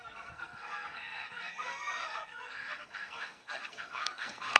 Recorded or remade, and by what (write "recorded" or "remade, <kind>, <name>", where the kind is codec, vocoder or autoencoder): remade, codec, SNAC